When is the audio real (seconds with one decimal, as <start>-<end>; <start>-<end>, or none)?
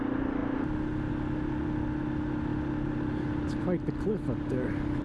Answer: 0.0-5.0